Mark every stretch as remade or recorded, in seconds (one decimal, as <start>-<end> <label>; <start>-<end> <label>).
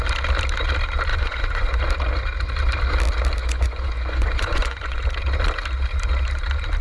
0.0-1.1 recorded; 1.1-1.8 remade; 1.8-3.4 recorded; 3.4-5.0 remade; 5.0-6.8 recorded